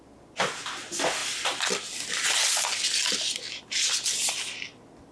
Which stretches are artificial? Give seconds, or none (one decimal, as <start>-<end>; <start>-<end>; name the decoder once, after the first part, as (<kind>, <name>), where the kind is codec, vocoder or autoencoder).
none